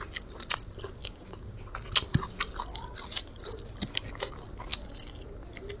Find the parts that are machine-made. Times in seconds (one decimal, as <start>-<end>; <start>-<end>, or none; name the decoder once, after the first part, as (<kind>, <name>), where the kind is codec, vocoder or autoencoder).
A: 1.0-1.6 (codec, DAC)

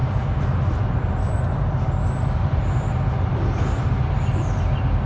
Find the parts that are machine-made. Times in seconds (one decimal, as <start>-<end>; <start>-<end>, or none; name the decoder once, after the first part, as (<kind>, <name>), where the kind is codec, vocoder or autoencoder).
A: none

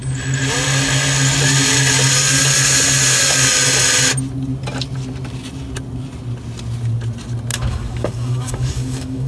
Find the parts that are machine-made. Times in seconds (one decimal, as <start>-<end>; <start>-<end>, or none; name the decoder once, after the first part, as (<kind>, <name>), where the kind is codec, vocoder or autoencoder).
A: 7.5-9.3 (codec, DAC)

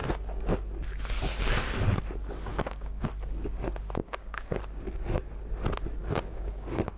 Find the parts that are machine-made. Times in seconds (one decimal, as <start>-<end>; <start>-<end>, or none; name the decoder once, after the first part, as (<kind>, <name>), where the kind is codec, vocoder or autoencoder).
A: 2.5-3.0 (codec, DAC); 4.0-4.6; 6.0-7.0

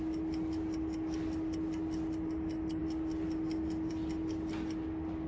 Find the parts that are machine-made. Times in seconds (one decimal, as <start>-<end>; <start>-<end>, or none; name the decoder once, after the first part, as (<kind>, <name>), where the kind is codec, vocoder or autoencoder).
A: none

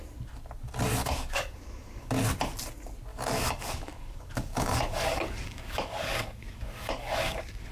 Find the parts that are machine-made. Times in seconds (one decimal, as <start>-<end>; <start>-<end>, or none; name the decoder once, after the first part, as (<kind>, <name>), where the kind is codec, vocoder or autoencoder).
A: 1.0-2.1 (codec, DAC); 3.1-7.7

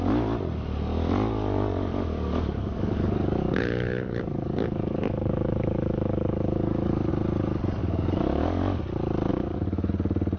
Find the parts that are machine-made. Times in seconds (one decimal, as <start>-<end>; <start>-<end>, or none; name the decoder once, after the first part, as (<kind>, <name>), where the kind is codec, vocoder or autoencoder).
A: 1.9-7.1 (codec, DAC); 7.8-8.8; 9.3-9.9

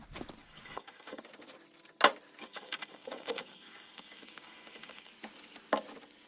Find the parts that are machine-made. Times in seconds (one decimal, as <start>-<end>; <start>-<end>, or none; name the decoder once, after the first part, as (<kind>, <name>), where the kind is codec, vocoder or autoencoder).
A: 0.4-1.2 (codec, DAC); 2.4-5.1